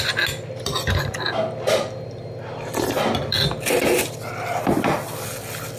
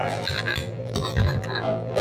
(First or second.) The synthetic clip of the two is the second